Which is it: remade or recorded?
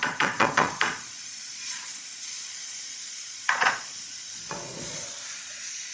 remade